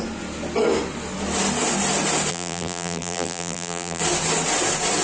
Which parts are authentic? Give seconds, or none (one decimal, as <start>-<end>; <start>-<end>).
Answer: 0.0-2.3; 4.0-5.0